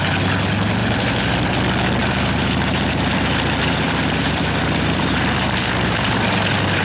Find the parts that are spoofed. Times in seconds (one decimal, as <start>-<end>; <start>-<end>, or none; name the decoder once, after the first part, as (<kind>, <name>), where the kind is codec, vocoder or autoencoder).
0.8-1.6 (vocoder, BigVGAN v2); 2.0-6.1